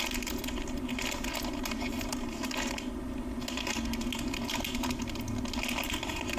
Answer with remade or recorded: recorded